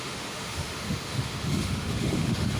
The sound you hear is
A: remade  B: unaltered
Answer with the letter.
A